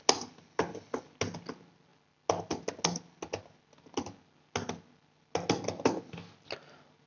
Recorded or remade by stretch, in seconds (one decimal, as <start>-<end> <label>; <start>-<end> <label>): 0.0-7.1 recorded